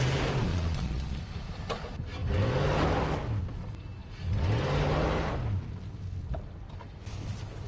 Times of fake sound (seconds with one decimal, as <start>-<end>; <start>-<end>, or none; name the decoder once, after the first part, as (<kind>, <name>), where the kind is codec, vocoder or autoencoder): 0.5-1.2 (vocoder, Vocos)